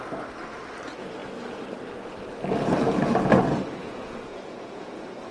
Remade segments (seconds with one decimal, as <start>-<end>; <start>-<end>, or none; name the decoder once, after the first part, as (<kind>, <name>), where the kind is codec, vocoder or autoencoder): 3.8-5.3 (vocoder, Vocos)